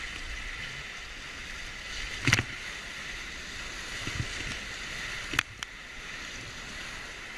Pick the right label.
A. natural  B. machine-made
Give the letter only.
A